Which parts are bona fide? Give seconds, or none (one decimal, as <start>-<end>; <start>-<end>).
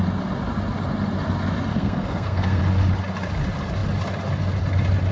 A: 0.0-1.7; 2.6-5.1